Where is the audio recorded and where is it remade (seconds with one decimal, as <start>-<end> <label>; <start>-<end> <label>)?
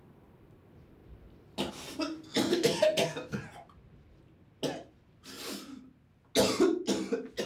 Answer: 0.0-2.5 recorded; 2.5-3.4 remade; 3.4-7.5 recorded